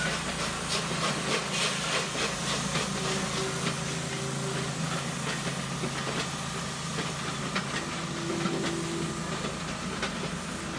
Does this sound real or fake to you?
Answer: real